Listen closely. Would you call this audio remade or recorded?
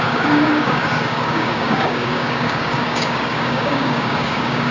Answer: remade